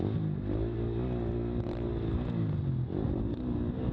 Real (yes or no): yes